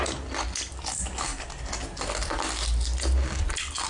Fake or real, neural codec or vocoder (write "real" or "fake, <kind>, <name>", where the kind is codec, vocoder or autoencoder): real